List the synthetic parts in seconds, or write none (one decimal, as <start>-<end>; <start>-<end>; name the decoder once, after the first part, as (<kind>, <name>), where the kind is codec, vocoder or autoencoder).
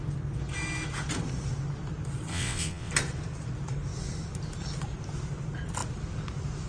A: 2.3-2.9 (vocoder, WaveNeXt)